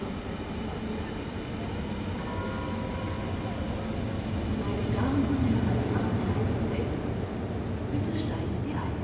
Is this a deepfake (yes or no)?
no